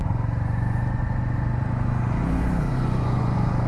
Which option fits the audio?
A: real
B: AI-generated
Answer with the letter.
B